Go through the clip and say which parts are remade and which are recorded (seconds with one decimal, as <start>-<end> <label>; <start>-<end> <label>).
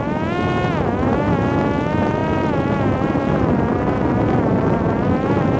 0.0-2.2 recorded; 2.2-5.6 remade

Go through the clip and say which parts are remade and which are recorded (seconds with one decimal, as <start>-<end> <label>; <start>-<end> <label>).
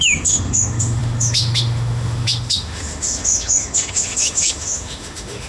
0.0-5.5 remade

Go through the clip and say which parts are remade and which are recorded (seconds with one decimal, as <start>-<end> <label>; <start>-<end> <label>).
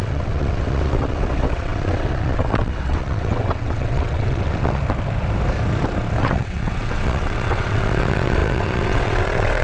0.0-4.8 remade; 4.8-6.2 recorded; 6.2-9.6 remade